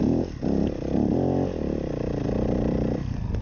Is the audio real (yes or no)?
yes